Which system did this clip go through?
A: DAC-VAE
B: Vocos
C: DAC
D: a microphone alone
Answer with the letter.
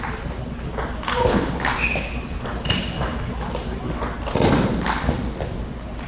D